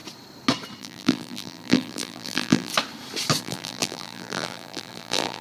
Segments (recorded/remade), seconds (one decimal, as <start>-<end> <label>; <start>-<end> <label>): 0.0-0.8 recorded; 0.8-2.7 remade; 2.7-3.4 recorded; 3.4-5.4 remade